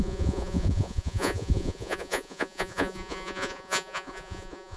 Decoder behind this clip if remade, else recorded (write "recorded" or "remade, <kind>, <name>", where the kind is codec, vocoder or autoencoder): remade, vocoder, Vocos